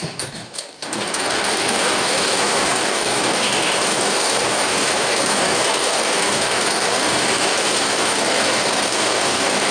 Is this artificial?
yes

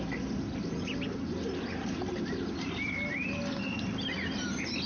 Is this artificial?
no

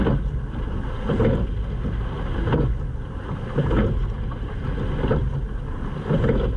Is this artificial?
no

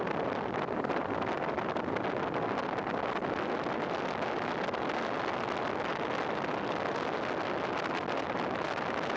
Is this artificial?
no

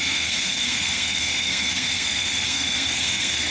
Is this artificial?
yes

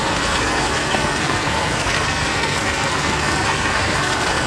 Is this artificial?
yes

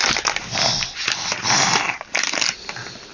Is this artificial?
no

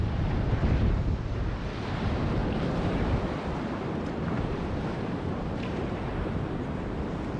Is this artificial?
yes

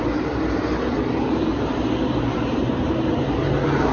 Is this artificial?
yes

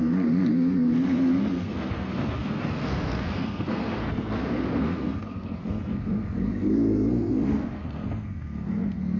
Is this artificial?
yes